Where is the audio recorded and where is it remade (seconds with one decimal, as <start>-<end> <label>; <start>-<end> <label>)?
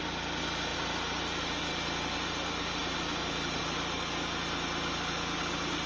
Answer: 0.0-5.9 recorded